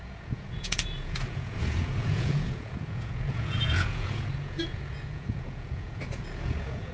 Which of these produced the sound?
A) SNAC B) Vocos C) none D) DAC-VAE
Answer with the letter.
B